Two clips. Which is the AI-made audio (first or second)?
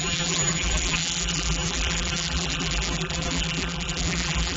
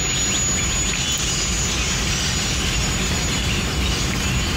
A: first